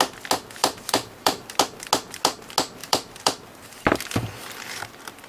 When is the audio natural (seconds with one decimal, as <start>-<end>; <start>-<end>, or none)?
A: 0.0-0.6; 1.6-2.8; 4.0-5.3

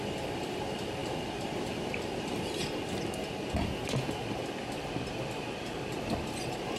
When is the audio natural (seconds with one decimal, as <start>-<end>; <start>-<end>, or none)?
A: 0.0-6.8

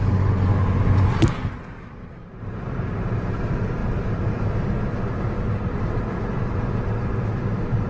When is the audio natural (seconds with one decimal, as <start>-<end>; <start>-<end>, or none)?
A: 0.0-7.9